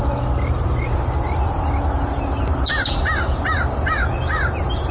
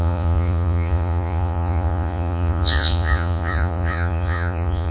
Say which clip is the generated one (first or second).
second